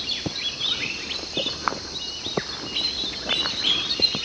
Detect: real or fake real